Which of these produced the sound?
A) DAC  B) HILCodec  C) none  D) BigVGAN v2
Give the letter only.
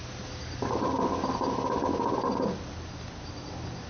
C